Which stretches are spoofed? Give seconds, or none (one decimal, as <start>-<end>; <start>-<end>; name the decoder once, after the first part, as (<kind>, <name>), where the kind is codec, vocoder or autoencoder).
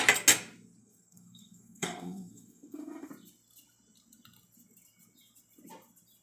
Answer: 0.8-3.1 (codec, SNAC)